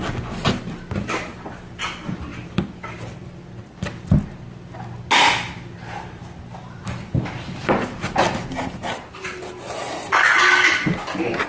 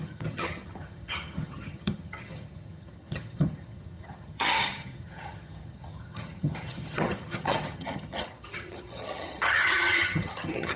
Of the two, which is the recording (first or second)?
first